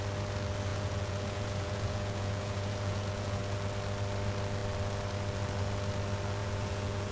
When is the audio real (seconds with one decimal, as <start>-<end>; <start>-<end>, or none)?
0.0-0.7; 3.4-6.4